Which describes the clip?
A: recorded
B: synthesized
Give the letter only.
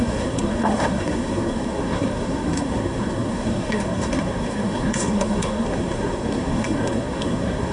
B